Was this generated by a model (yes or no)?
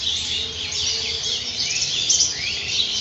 no